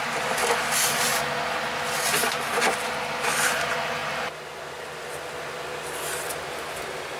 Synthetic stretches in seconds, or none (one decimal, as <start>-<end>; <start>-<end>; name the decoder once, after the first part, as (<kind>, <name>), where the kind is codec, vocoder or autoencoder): none

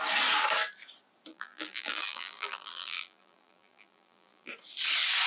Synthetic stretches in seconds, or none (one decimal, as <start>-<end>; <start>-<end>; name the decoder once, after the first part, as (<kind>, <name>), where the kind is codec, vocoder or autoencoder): 1.3-4.5 (vocoder, BigVGAN v2)

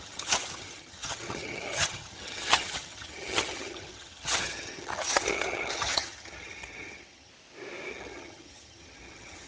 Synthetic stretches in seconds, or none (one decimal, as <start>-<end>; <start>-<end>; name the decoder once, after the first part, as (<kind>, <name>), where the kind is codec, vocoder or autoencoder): 0.0-7.3 (vocoder, HiFi-GAN); 7.9-9.5